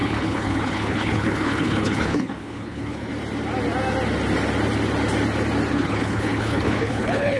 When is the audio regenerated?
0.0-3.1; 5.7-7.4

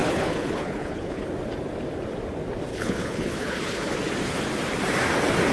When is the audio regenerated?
0.0-1.3; 2.7-3.9